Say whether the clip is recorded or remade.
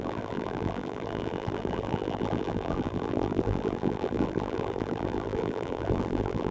remade